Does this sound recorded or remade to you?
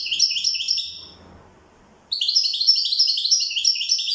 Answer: recorded